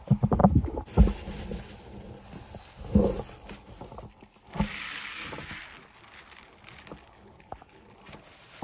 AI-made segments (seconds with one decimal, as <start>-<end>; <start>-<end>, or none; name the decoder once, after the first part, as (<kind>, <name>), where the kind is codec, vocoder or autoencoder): none

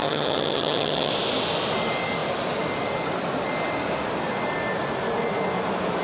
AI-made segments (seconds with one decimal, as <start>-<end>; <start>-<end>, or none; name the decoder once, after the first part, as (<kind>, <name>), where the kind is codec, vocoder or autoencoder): 0.0-1.1 (vocoder, HiFi-GAN)

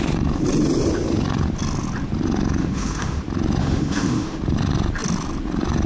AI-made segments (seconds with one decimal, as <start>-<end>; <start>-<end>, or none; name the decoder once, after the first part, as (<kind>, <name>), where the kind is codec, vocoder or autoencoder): 2.6-3.2 (autoencoder, DAC-VAE); 3.6-4.4

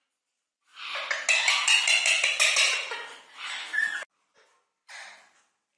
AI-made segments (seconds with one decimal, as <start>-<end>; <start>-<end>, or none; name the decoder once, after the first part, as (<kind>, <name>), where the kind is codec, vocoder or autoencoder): none

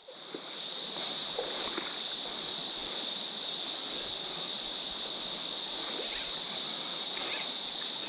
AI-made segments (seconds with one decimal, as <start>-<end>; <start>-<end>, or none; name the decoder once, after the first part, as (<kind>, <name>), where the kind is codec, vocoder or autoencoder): 0.0-1.7 (vocoder, BigVGAN v2); 6.9-8.1

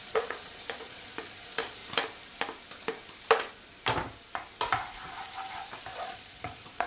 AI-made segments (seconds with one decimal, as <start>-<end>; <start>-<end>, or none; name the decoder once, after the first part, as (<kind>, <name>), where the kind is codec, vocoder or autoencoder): 0.0-1.8 (vocoder, Vocos); 5.9-6.9